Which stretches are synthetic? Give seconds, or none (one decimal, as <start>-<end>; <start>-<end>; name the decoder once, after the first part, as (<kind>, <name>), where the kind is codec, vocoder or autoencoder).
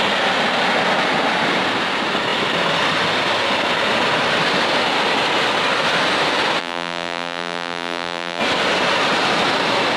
6.6-8.4 (vocoder, BigVGAN v2)